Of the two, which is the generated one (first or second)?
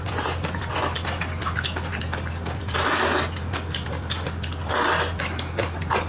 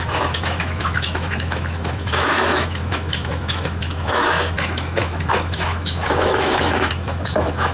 second